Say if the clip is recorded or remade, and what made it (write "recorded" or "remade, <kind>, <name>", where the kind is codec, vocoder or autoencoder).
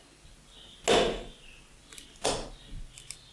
recorded